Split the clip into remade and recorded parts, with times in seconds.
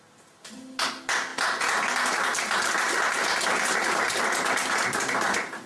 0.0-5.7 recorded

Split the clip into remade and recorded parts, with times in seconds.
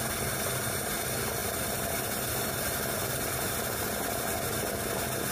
0.0-5.3 recorded